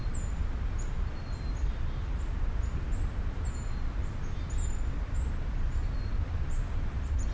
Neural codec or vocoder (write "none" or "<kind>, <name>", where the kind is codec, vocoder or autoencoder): none